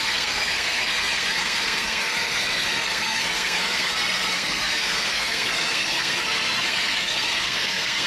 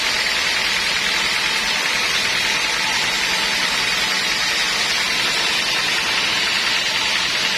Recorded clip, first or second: second